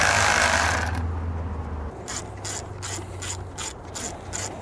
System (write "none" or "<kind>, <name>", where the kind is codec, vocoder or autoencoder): none